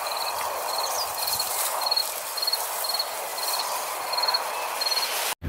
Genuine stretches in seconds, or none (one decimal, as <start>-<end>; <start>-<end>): 0.0-5.5

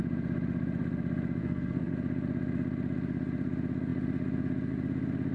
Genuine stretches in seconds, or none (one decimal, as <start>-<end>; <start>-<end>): 0.0-1.4; 1.9-5.3

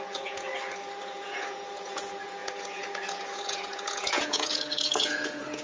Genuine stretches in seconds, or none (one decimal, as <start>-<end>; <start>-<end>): 0.5-1.0

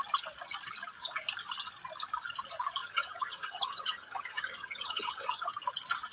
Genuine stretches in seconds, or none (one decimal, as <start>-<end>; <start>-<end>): 0.0-2.8; 5.5-6.1